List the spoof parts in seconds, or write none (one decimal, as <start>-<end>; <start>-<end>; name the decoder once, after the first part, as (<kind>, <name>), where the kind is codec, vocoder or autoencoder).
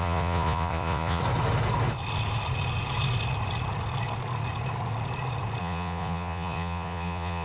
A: 0.0-1.2 (vocoder, Vocos); 5.6-7.4